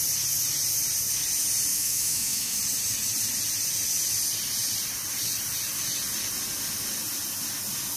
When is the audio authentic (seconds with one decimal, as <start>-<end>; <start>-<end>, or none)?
0.0-1.7; 2.6-8.0